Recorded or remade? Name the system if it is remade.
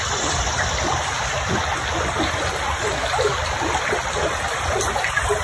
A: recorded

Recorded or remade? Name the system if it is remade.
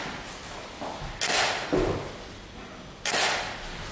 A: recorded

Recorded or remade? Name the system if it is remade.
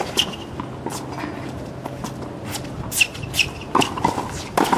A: recorded